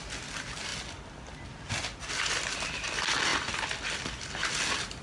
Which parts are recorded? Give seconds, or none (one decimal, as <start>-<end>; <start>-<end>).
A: 0.0-5.0